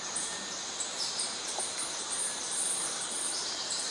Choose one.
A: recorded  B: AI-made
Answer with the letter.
B